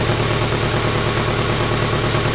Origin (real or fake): real